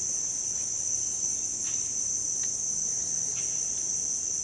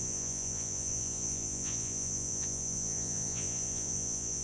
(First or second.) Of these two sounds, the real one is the first